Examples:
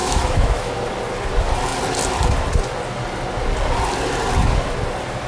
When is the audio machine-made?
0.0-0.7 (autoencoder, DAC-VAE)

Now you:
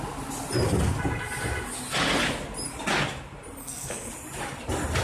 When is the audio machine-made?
3.6-4.1 (codec, SNAC)

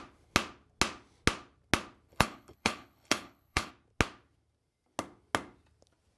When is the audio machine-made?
2.1-3.7 (codec, HILCodec)

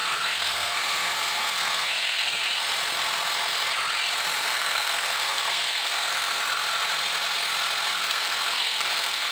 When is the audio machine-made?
0.0-2.4 (codec, SNAC); 4.4-6.4; 7.9-9.3